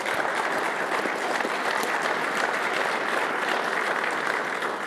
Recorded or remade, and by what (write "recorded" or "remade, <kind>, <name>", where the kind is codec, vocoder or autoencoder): recorded